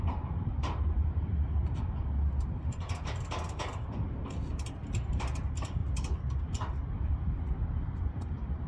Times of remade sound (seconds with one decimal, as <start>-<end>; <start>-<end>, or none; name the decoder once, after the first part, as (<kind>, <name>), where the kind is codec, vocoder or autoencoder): 0.0-1.4 (vocoder, BigVGAN v2); 4.8-5.8; 7.0-8.7